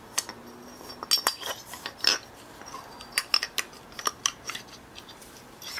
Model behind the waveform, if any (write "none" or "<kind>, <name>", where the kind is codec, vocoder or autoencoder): none